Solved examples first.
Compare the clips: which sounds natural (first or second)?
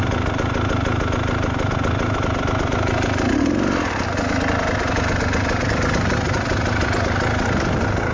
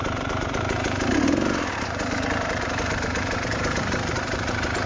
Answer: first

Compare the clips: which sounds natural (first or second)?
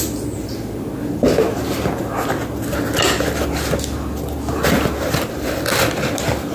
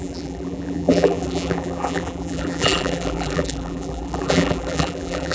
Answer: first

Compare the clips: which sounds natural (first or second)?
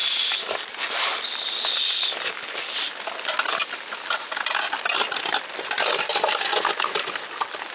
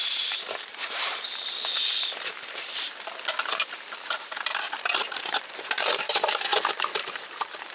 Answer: first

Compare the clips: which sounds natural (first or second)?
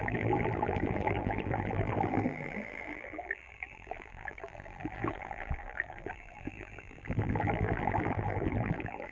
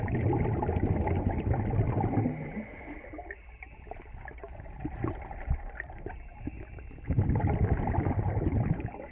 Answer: second